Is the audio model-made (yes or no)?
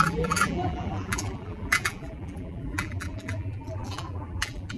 yes